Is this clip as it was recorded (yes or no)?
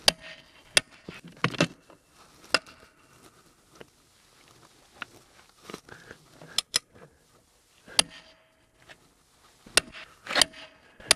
yes